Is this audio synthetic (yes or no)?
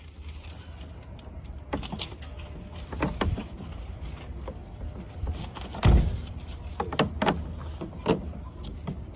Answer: no